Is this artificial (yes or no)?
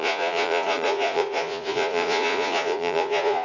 yes